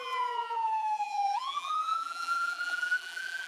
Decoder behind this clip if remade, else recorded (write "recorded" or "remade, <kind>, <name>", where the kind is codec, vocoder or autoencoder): remade, vocoder, BigVGAN v2